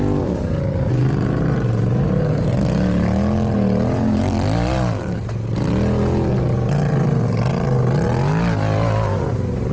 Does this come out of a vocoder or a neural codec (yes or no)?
no